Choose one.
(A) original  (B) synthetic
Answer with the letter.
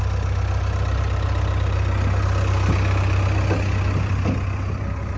A